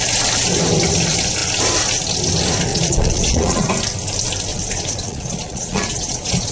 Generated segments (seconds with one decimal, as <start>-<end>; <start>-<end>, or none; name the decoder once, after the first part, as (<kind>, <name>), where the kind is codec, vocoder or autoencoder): 2.7-3.7 (vocoder, Vocos); 4.5-6.5